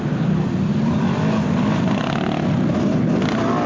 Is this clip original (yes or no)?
yes